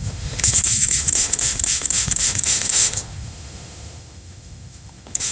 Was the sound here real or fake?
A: fake